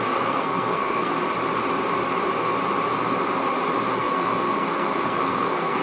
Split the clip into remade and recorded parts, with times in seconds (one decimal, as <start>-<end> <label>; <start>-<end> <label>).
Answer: 0.0-1.1 remade; 1.1-4.0 recorded; 4.0-5.8 remade